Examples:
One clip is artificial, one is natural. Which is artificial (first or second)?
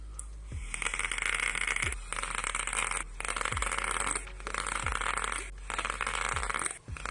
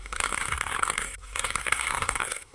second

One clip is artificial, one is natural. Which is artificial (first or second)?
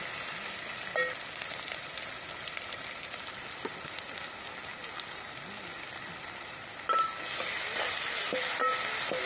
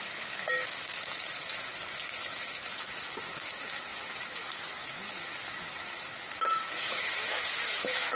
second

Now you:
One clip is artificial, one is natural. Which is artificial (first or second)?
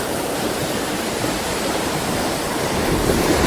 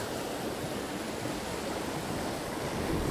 first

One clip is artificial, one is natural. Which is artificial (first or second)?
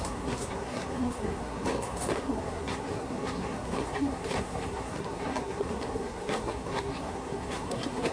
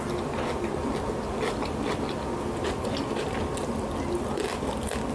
first